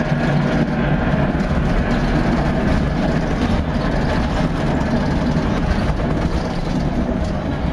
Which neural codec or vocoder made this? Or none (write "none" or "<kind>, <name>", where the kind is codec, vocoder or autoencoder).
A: none